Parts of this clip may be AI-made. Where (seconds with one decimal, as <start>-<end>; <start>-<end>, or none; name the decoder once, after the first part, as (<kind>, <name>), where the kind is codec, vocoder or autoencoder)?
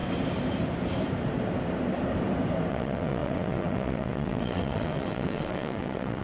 2.7-6.2 (vocoder, WaveNeXt)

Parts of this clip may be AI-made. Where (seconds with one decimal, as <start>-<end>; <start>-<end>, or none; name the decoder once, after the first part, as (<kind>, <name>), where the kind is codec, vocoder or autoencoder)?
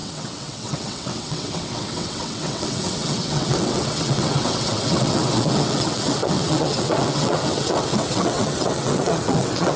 0.0-9.8 (vocoder, WaveNeXt)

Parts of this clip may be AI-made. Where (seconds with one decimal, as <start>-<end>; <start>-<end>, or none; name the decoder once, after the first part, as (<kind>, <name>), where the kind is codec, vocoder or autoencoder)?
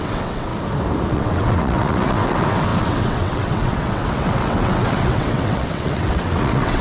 0.0-0.5 (vocoder, WaveNeXt); 1.1-6.8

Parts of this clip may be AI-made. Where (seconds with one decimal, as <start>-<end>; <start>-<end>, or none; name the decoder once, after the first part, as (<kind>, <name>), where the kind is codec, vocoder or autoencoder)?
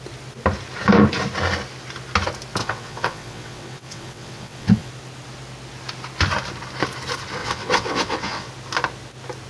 2.6-4.9 (vocoder, WaveNeXt); 7.4-8.5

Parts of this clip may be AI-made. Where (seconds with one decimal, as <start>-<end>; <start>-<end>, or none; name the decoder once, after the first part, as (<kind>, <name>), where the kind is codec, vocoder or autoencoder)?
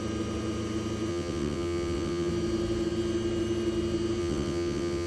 1.1-2.3 (vocoder, WaveNeXt); 4.2-5.1